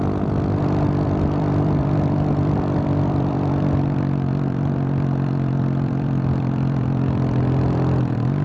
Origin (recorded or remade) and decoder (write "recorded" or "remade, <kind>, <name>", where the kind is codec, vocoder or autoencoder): remade, vocoder, BigVGAN v2